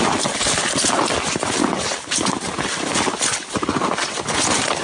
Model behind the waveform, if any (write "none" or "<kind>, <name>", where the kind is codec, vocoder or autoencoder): none